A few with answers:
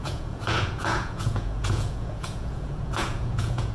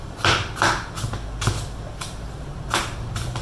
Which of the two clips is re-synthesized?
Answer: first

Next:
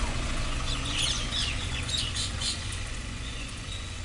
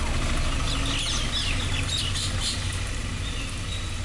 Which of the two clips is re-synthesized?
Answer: first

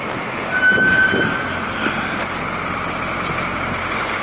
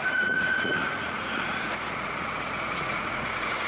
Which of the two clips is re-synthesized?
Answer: second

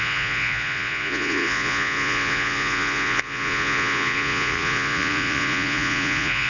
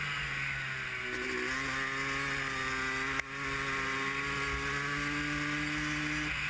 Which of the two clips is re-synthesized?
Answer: first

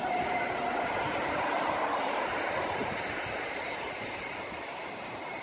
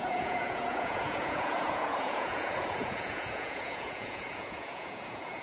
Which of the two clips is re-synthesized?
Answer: second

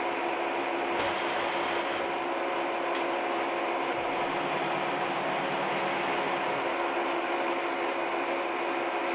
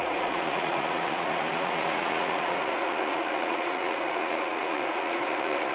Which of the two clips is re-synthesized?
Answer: second